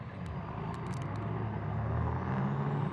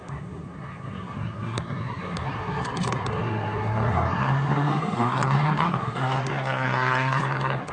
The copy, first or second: second